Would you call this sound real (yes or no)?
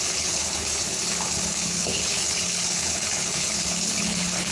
no